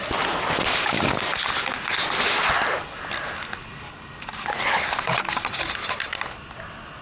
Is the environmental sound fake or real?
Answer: real